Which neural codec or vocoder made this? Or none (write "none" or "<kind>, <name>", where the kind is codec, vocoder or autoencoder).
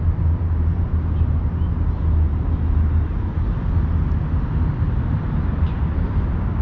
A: none